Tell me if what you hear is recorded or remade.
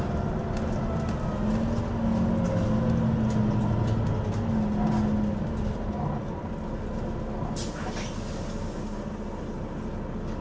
recorded